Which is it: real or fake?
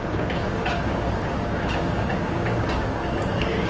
fake